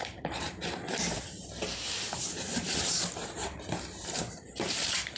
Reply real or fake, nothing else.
fake